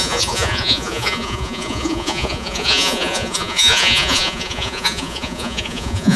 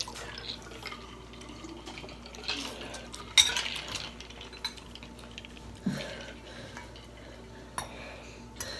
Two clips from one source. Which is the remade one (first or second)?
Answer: first